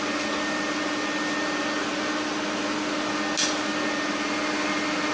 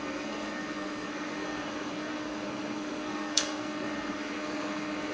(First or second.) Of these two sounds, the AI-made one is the second